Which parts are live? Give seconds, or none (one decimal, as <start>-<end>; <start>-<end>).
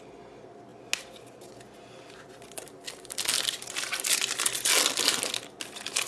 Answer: 0.0-6.1